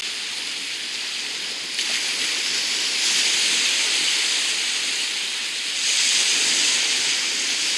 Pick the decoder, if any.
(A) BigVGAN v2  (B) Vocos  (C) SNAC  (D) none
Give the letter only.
D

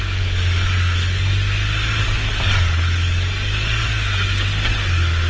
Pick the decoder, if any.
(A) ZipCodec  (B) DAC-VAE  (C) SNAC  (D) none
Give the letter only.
D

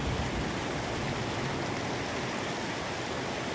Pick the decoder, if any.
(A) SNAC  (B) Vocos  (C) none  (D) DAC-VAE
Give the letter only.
C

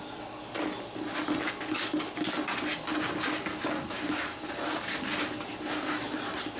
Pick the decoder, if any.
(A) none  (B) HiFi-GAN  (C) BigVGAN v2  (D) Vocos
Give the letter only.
A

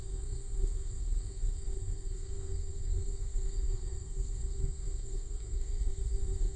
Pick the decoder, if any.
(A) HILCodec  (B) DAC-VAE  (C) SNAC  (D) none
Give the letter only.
C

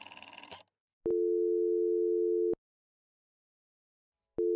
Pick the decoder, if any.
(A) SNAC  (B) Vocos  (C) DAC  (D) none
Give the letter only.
D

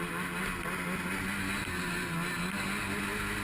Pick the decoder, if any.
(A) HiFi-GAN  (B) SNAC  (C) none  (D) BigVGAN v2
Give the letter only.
C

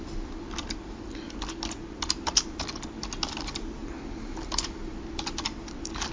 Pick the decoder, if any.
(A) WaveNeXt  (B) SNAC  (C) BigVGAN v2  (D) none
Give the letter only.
D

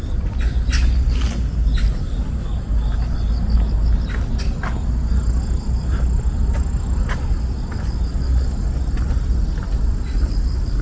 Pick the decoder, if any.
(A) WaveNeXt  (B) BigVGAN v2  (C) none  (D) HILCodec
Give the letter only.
C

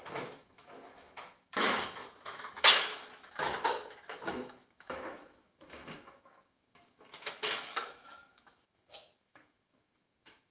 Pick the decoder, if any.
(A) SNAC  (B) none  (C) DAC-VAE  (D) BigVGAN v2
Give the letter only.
C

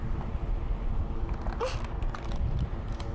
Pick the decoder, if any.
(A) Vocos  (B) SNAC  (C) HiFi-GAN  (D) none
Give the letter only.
D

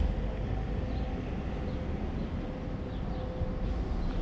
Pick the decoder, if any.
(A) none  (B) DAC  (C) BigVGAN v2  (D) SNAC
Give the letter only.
A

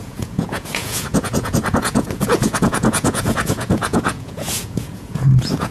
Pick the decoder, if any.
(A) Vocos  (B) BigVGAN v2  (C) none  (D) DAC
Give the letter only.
A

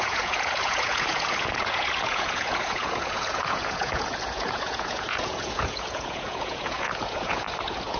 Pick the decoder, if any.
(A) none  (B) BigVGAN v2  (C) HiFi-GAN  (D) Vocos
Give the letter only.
D